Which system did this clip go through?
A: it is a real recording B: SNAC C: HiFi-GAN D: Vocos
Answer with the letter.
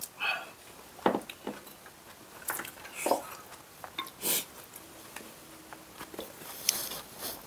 A